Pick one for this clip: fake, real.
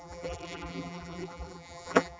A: fake